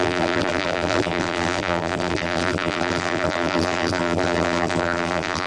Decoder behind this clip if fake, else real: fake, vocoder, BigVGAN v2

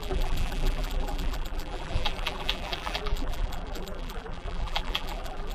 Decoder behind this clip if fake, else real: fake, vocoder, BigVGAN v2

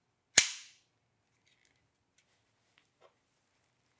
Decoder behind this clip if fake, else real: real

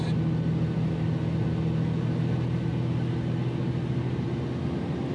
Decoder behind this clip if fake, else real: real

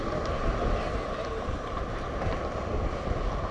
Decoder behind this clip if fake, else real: real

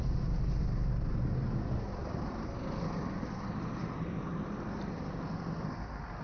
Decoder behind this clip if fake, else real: fake, vocoder, BigVGAN v2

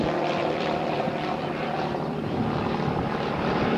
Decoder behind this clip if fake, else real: fake, vocoder, BigVGAN v2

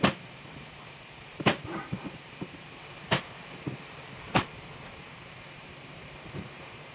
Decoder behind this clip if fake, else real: fake, vocoder, BigVGAN v2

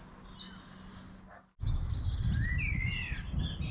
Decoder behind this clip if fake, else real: real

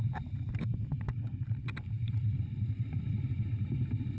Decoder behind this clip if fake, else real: real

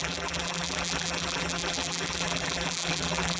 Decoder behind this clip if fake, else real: fake, vocoder, BigVGAN v2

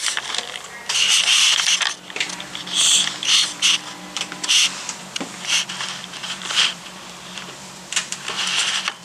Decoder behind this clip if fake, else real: fake, vocoder, BigVGAN v2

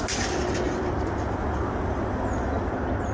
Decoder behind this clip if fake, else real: real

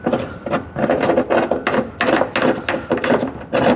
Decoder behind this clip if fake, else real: real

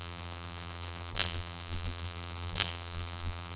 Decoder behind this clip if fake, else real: fake, vocoder, BigVGAN v2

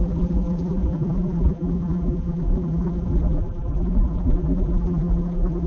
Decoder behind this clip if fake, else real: fake, vocoder, BigVGAN v2